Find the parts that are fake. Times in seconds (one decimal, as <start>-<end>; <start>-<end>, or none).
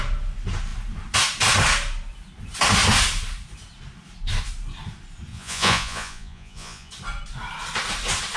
5.3-6.9